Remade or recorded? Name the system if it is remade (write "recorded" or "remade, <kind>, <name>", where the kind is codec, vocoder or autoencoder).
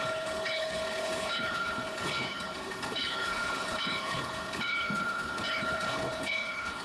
remade, codec, HILCodec